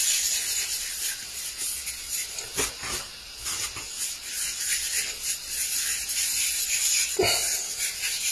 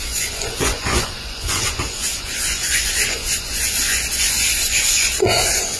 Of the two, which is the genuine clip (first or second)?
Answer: first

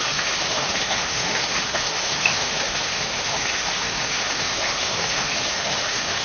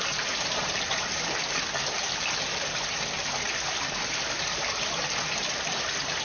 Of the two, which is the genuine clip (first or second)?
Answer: second